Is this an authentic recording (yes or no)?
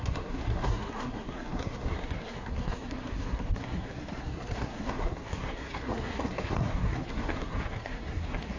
no